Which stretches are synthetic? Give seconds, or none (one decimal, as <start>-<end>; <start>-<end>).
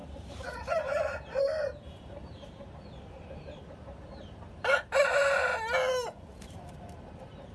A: 0.0-5.5; 6.4-7.5